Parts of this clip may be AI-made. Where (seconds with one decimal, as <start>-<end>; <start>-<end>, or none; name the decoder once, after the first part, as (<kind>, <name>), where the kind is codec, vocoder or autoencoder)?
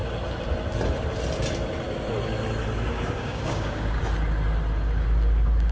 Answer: 2.9-4.0 (codec, DAC)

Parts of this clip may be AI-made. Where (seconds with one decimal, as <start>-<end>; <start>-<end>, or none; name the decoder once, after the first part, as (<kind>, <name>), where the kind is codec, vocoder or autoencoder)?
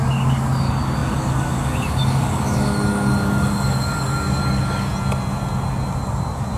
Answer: 0.0-4.9 (codec, DAC)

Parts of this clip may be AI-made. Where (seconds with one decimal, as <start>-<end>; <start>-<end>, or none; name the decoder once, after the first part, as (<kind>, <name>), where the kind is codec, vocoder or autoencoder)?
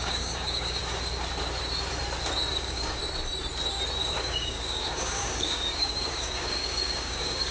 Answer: 0.0-0.8 (codec, DAC); 2.5-3.0; 4.0-7.5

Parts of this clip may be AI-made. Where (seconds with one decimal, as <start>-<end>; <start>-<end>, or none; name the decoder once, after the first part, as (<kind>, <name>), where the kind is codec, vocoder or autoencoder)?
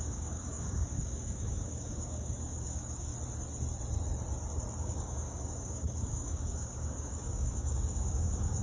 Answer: 0.0-3.1 (codec, DAC); 4.8-8.6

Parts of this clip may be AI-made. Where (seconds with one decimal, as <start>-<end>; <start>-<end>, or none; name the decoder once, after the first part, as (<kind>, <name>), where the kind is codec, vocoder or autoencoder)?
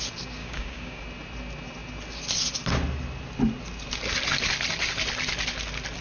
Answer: 0.4-1.0 (codec, DAC)